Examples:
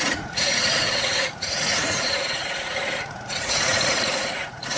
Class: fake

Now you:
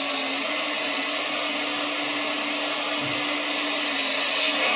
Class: real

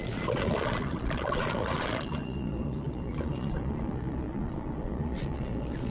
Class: fake